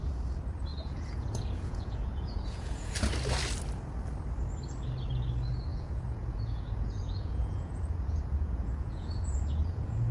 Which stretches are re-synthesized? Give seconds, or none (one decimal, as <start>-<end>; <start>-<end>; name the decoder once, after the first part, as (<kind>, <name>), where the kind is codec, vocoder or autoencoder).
0.7-2.9 (vocoder, Vocos); 5.7-10.1